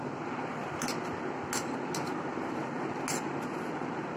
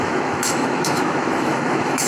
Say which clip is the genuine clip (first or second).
first